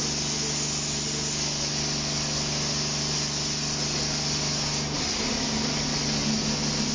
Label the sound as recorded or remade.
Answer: recorded